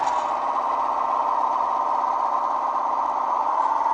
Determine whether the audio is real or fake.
real